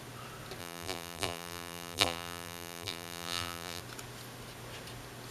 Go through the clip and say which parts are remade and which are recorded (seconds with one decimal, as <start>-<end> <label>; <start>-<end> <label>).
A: 0.0-0.6 recorded; 0.6-3.8 remade; 3.8-5.3 recorded

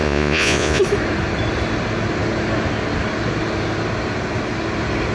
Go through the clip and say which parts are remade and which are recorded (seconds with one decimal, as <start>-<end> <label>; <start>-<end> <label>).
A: 0.0-0.8 remade; 0.8-5.1 recorded

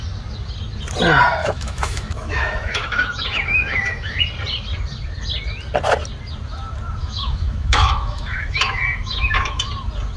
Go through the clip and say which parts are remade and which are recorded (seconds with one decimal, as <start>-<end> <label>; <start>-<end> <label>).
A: 0.0-1.4 recorded; 1.4-4.2 remade; 4.2-7.0 recorded; 7.0-9.7 remade; 9.7-10.2 recorded

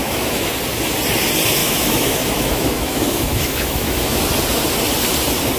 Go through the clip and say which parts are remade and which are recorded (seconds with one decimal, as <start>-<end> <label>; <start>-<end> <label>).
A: 0.0-0.5 remade; 0.5-1.6 recorded; 1.6-4.2 remade; 4.2-5.6 recorded

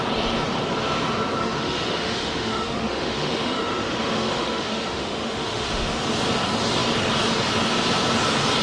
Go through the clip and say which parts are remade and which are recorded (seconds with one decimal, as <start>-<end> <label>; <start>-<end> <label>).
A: 0.0-1.4 recorded; 1.4-6.0 remade; 6.0-8.6 recorded

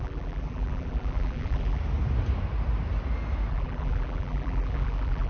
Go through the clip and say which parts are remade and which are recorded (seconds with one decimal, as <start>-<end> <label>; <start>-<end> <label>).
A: 0.0-1.8 remade; 1.8-3.5 recorded; 3.5-5.3 remade